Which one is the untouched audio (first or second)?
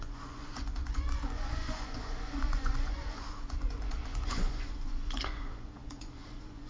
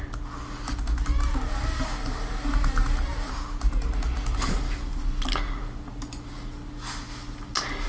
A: second